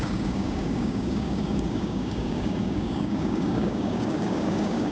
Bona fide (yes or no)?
no